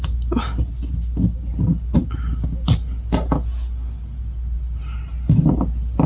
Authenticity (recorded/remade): recorded